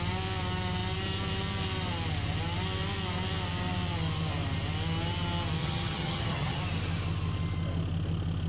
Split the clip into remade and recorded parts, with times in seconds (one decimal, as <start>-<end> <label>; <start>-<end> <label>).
0.0-5.6 recorded; 5.6-6.6 remade; 6.6-8.5 recorded